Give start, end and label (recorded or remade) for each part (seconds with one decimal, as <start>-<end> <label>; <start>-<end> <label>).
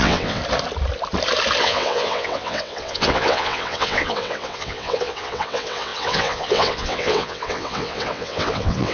0.0-0.4 remade; 0.4-1.6 recorded; 1.6-8.9 remade